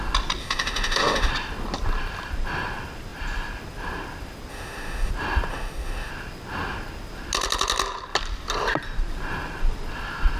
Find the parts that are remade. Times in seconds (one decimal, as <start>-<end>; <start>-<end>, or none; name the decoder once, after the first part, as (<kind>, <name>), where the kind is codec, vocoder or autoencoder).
0.4-1.3 (autoencoder, DAC-VAE); 4.5-5.1; 5.5-6.1